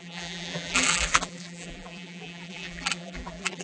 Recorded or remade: remade